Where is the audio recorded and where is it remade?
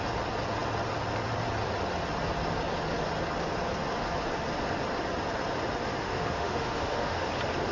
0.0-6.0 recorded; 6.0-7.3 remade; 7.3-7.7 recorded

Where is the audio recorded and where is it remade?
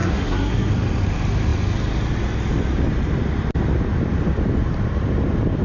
0.0-0.7 remade; 0.7-5.6 recorded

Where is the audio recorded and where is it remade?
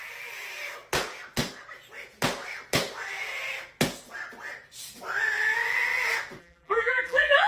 0.0-6.4 recorded; 6.4-7.5 remade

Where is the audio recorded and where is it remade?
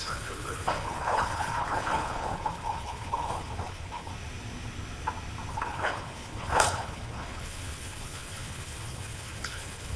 0.0-4.1 remade; 4.1-5.5 recorded; 5.5-10.0 remade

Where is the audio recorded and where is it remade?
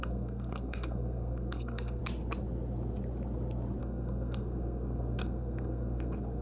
0.0-2.0 remade; 2.0-3.8 recorded; 3.8-6.4 remade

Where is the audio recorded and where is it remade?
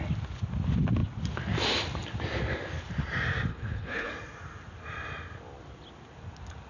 0.0-3.5 recorded; 3.5-4.1 remade; 4.1-6.7 recorded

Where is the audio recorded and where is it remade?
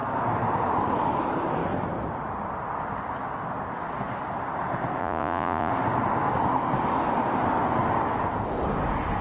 0.0-5.0 recorded; 5.0-5.7 remade; 5.7-9.2 recorded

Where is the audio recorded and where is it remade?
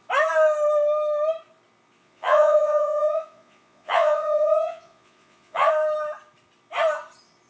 0.0-2.0 recorded; 2.0-5.7 remade; 5.7-7.5 recorded